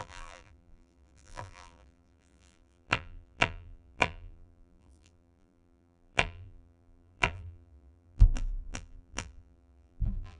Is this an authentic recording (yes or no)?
no